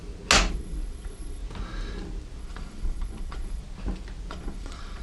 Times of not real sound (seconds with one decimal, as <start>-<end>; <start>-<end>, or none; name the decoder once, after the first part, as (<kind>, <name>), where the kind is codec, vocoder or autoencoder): 0.5-1.4 (vocoder, Vocos); 2.4-3.6; 4.3-5.0